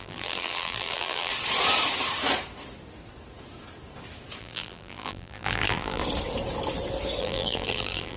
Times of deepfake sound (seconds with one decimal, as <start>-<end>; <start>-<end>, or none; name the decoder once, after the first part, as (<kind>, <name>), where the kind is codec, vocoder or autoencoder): 0.0-1.3 (vocoder, BigVGAN v2); 4.4-6.0; 7.2-8.2